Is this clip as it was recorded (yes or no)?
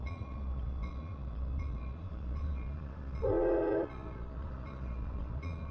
no